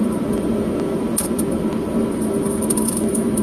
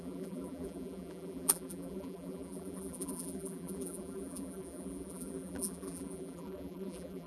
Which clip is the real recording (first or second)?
first